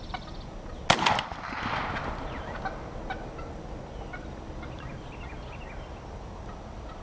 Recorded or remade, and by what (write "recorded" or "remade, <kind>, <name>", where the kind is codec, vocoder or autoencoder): recorded